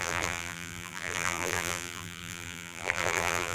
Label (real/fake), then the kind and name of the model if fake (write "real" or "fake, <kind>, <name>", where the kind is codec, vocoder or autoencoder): fake, vocoder, BigVGAN v2